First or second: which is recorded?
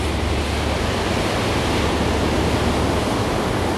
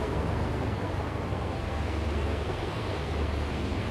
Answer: first